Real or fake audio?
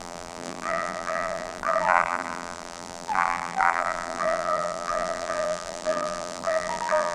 fake